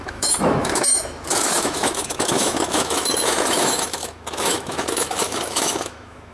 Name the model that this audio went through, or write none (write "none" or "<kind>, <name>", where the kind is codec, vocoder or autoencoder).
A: autoencoder, DAC-VAE